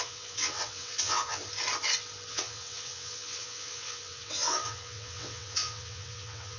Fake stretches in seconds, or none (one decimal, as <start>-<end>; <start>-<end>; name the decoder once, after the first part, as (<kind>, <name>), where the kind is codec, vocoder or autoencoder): 0.0-1.4 (vocoder, WaveNeXt); 2.3-6.6